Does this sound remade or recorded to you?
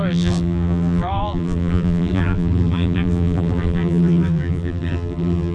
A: remade